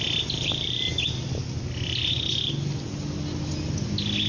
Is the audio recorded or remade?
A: recorded